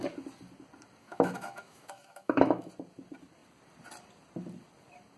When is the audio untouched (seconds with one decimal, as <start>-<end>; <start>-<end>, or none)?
0.0-1.0; 2.7-5.2